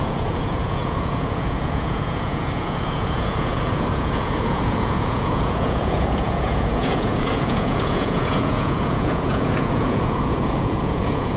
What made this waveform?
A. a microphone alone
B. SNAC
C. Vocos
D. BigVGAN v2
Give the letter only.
C